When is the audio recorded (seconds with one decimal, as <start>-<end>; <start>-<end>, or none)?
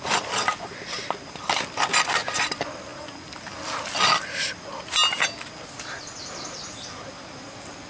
0.0-7.9